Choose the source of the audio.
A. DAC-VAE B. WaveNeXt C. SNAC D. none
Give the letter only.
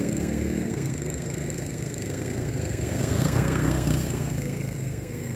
C